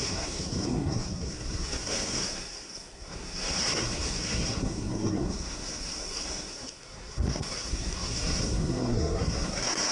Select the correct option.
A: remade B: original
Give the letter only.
A